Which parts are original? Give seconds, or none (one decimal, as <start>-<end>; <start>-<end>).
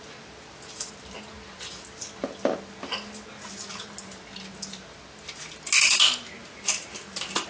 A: 0.0-7.5